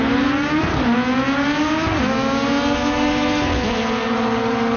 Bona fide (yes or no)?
yes